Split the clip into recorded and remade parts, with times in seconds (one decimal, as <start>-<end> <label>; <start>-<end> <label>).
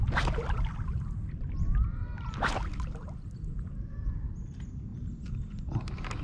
0.0-6.2 recorded